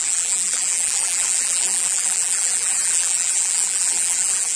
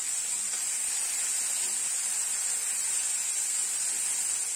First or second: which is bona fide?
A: second